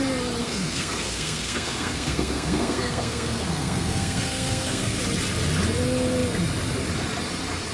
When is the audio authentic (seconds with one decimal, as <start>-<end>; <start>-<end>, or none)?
0.0-0.4; 5.0-7.7